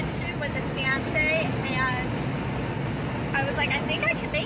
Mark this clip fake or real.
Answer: real